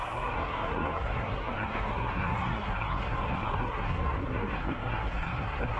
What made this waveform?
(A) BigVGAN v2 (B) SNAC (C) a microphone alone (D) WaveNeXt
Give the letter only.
B